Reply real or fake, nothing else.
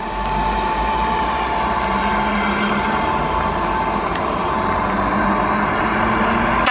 real